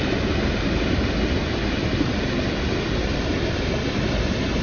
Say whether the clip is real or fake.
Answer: real